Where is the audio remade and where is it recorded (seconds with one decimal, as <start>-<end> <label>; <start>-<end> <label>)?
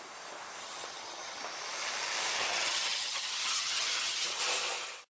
0.0-0.6 recorded; 0.6-1.4 remade; 1.4-2.5 recorded; 2.5-4.4 remade; 4.4-5.1 recorded